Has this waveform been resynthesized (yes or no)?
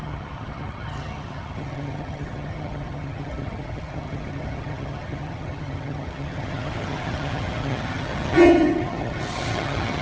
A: yes